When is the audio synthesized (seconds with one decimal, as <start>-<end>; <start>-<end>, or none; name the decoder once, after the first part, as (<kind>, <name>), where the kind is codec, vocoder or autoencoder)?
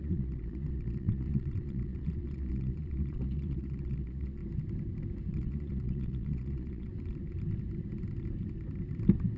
0.0-4.4 (vocoder, Vocos); 5.3-6.9